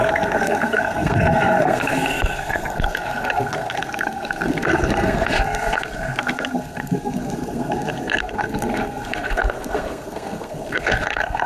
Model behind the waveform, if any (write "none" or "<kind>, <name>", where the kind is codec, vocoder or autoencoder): codec, SNAC